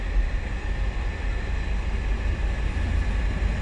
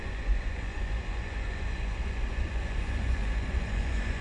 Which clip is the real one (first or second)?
first